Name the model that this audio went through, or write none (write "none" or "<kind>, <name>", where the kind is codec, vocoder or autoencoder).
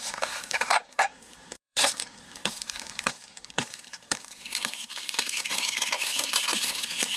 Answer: codec, SNAC